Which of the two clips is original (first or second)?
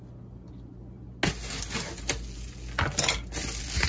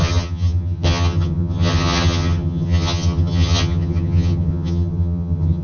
first